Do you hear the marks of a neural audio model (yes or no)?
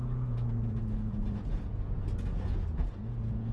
yes